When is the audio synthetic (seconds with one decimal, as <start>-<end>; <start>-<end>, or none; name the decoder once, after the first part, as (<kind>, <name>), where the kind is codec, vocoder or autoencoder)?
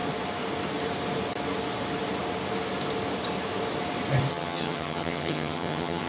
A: 4.3-6.1 (vocoder, HiFi-GAN)